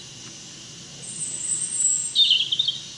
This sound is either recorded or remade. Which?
recorded